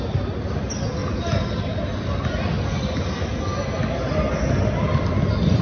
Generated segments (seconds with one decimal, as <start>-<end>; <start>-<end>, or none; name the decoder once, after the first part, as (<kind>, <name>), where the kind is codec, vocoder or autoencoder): none